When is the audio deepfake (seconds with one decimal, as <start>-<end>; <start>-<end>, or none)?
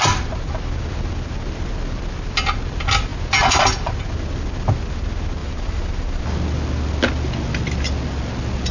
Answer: 5.4-6.2